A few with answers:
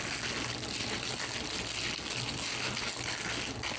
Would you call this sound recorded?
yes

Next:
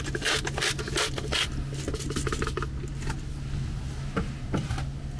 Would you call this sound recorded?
yes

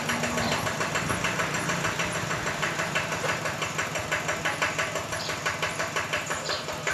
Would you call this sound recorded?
yes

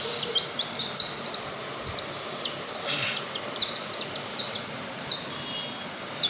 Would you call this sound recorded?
yes